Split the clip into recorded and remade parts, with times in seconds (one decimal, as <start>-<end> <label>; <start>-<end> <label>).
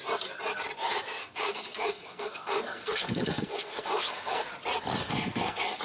0.0-1.2 recorded; 1.2-4.5 remade; 4.5-5.0 recorded; 5.0-5.8 remade